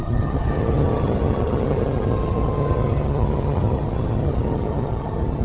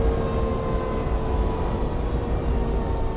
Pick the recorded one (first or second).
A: second